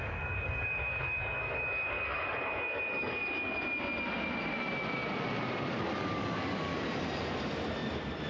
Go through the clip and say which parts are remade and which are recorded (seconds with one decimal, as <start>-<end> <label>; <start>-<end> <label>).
0.0-3.2 remade; 3.2-5.7 recorded; 5.7-6.7 remade; 6.7-8.3 recorded